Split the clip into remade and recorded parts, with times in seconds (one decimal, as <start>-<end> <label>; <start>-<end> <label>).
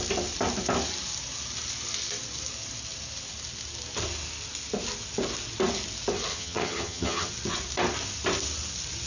0.0-6.3 recorded; 6.3-7.3 remade; 7.3-9.1 recorded